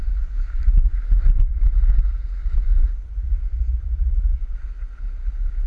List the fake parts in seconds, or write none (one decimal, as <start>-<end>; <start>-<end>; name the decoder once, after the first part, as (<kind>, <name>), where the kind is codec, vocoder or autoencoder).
1.5-2.7 (vocoder, BigVGAN v2)